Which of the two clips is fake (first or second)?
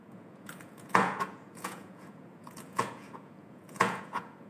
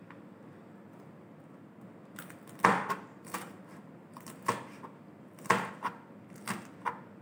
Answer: first